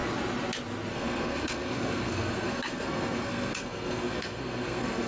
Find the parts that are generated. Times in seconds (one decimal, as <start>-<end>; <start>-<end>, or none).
0.9-5.1